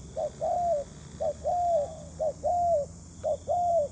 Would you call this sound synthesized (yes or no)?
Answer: no